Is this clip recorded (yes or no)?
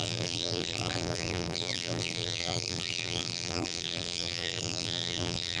no